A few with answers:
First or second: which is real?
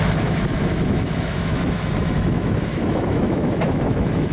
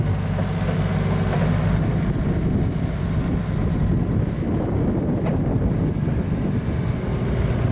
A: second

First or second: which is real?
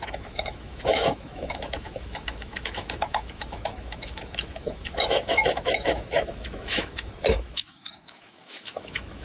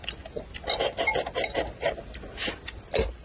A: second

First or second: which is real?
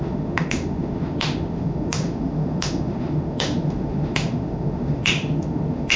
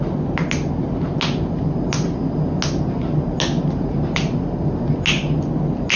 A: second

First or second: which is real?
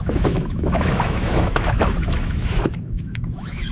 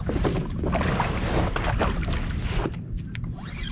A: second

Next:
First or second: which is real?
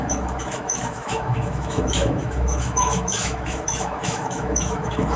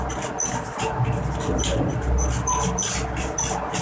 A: second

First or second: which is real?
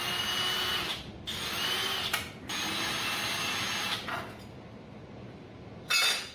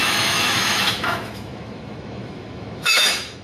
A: first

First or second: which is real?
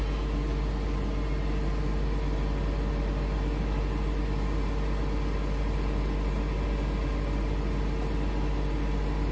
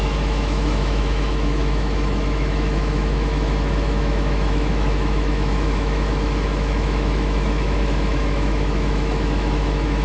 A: first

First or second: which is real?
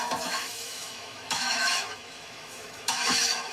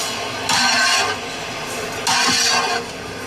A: second